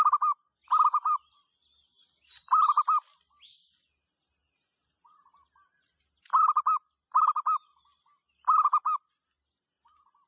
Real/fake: real